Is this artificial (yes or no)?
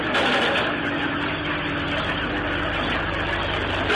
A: no